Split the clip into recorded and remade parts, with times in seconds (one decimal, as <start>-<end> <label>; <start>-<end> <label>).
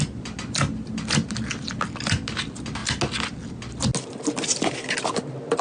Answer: 0.0-5.6 recorded